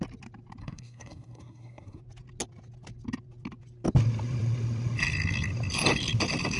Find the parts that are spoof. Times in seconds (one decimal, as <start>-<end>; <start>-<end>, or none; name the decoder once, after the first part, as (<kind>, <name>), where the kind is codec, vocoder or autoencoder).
0.6-2.0 (codec, SNAC)